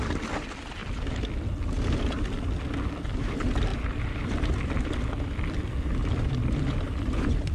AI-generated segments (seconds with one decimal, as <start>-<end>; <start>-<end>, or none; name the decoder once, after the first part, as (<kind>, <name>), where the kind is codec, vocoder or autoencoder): 0.0-0.8 (vocoder, BigVGAN v2); 3.0-7.5